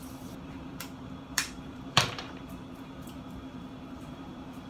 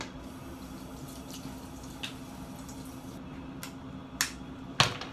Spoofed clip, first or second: first